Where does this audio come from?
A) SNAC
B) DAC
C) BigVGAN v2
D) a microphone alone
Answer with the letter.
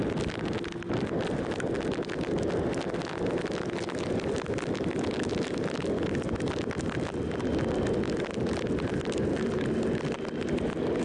D